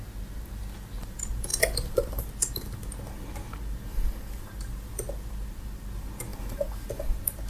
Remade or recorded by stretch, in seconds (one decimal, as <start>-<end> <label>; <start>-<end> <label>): 0.0-1.5 recorded; 1.5-2.2 remade; 2.2-3.9 recorded; 3.9-4.5 remade; 4.5-6.3 recorded; 6.3-6.9 remade; 6.9-7.5 recorded